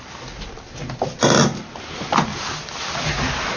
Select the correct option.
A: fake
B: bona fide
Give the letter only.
B